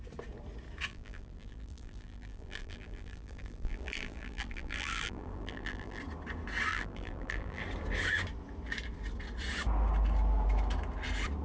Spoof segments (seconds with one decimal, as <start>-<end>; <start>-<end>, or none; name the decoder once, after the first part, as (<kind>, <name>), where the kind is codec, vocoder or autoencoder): 0.9-6.0 (vocoder, BigVGAN v2); 6.7-7.6

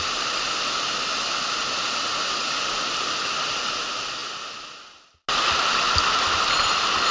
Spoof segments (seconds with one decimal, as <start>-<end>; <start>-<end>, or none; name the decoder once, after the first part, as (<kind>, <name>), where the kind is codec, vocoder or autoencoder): none

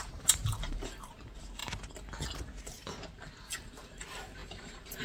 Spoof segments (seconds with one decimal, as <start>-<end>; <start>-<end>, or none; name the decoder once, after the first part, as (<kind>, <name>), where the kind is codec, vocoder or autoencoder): 0.0-1.6 (vocoder, BigVGAN v2); 3.5-5.0

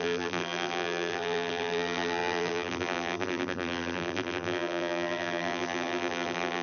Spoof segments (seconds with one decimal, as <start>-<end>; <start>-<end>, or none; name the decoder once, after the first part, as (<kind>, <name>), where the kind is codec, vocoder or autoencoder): 0.0-6.6 (vocoder, BigVGAN v2)

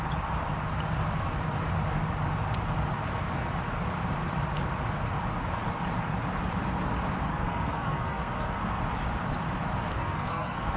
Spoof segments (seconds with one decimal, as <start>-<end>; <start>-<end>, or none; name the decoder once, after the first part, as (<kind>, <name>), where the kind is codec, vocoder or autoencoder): 7.3-8.8 (codec, SNAC); 9.9-10.8